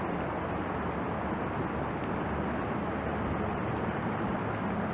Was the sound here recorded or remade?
recorded